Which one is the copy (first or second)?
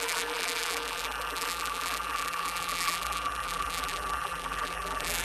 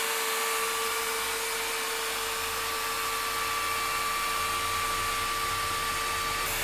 first